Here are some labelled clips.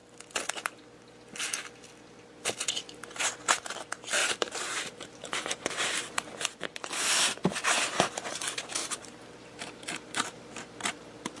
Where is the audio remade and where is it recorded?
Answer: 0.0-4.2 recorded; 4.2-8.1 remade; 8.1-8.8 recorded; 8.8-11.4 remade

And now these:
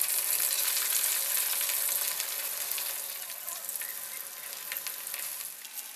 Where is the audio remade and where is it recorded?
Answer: 0.0-6.0 recorded

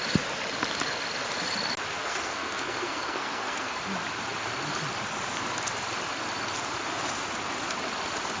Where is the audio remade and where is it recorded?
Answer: 0.0-2.0 recorded; 2.0-3.8 remade; 3.8-8.4 recorded

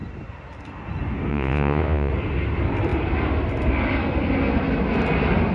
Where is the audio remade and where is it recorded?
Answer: 0.0-1.3 recorded; 1.3-2.1 remade; 2.1-5.5 recorded

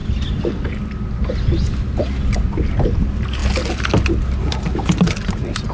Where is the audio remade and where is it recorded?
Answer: 0.0-5.7 recorded

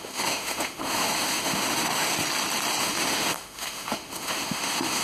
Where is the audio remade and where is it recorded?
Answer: 0.0-2.1 remade; 2.1-2.8 recorded; 2.8-5.0 remade